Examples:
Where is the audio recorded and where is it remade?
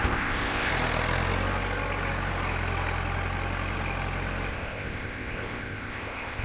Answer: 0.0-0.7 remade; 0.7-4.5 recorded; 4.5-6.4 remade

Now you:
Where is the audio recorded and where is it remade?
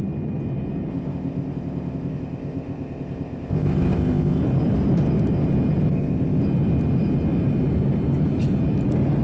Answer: 0.0-0.9 recorded; 0.9-4.4 remade; 4.4-5.9 recorded; 5.9-6.4 remade; 6.4-9.2 recorded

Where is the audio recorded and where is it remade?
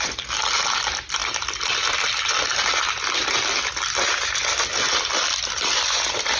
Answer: 0.0-6.4 recorded